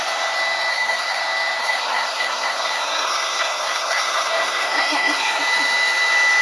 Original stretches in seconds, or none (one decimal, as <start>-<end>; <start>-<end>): 0.0-0.7; 1.2-1.6; 5.4-6.4